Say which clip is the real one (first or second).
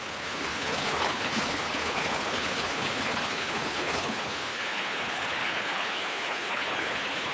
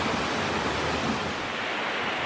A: second